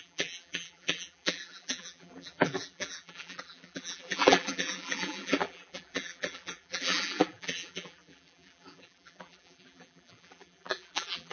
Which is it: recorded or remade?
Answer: remade